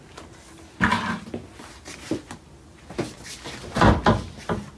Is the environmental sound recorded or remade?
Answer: recorded